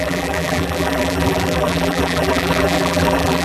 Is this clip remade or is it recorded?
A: remade